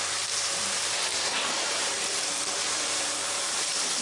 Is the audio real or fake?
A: fake